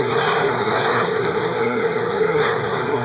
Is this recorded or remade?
remade